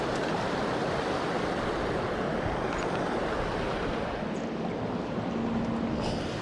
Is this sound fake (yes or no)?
no